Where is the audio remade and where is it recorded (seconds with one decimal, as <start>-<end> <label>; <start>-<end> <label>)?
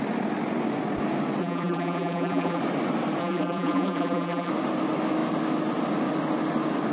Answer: 0.0-1.4 recorded; 1.4-2.6 remade; 2.6-3.2 recorded; 3.2-4.5 remade; 4.5-6.9 recorded